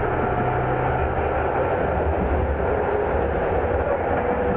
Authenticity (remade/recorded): recorded